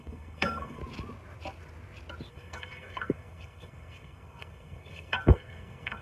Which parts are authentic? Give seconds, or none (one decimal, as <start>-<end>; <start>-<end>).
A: 0.8-2.3